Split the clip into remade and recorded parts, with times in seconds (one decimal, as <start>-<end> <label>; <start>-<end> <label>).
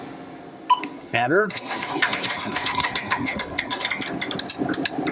0.0-0.8 recorded; 0.8-3.9 remade; 3.9-5.1 recorded